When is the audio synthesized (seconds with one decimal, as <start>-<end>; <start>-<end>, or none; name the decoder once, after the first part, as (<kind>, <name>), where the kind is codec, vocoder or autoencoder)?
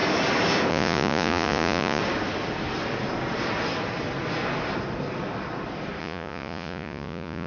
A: 0.7-2.0 (vocoder, Vocos); 6.0-7.5